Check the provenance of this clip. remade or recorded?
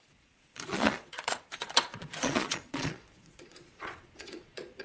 remade